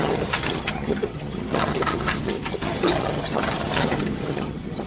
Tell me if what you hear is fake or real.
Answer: fake